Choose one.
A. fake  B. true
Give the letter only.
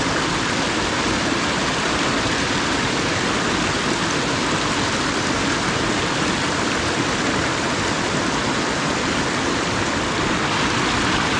B